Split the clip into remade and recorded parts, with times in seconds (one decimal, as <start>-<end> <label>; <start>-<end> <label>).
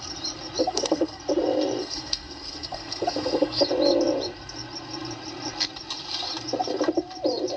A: 0.0-0.6 recorded; 0.6-1.2 remade; 1.2-1.8 recorded; 1.8-3.6 remade; 3.6-7.6 recorded